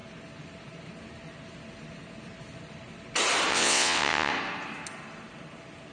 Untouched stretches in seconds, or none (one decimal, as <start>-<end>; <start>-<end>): 0.0-3.5; 4.3-5.9